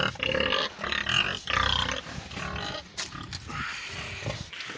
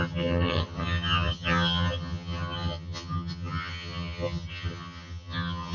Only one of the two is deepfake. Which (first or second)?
second